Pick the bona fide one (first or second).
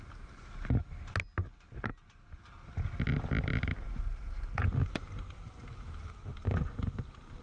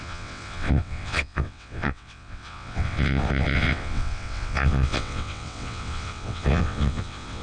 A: first